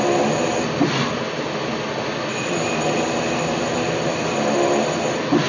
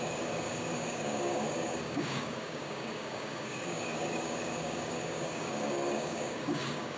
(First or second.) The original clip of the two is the first